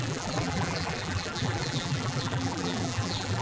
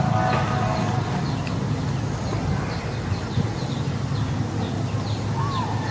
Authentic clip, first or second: second